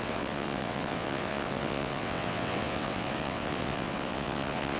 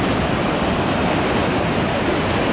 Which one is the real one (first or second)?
second